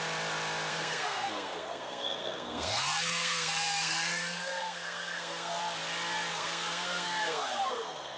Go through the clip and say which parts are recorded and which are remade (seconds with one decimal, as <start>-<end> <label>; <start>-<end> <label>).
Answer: 0.0-0.7 recorded; 0.7-5.6 remade; 5.6-6.3 recorded; 6.3-8.2 remade

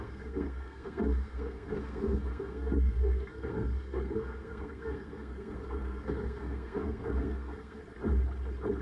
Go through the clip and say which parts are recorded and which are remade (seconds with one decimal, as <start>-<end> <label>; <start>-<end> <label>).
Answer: 0.0-7.8 remade; 7.8-8.8 recorded

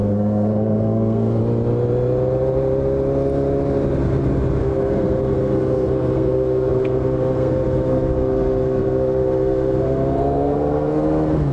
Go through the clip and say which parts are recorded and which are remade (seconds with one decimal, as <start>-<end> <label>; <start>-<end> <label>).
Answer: 0.0-1.4 remade; 1.4-4.6 recorded; 4.6-11.5 remade

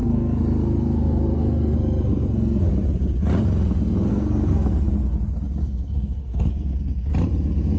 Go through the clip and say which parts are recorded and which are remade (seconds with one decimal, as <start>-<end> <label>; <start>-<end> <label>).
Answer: 0.0-2.7 remade; 2.7-4.1 recorded; 4.1-4.9 remade; 4.9-5.6 recorded; 5.6-7.1 remade; 7.1-7.8 recorded

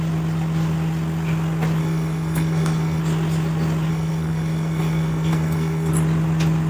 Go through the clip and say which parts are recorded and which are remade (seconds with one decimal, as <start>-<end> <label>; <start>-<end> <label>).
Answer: 0.0-1.8 recorded; 1.8-3.0 remade; 3.0-3.9 recorded; 3.9-5.9 remade; 5.9-6.7 recorded

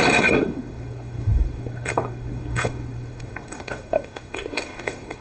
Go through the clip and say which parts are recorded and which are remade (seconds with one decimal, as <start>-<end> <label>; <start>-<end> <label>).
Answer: 0.0-5.2 remade